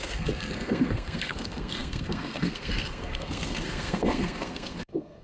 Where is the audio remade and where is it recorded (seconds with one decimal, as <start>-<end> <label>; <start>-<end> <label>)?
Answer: 0.0-5.2 remade